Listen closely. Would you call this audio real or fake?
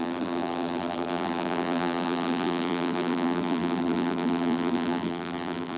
fake